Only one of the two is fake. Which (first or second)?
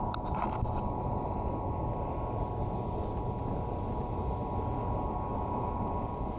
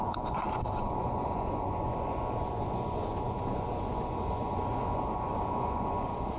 second